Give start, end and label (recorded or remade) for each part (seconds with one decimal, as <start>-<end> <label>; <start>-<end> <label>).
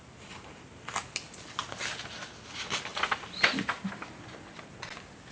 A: 0.0-5.3 recorded